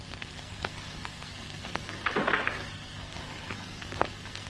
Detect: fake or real fake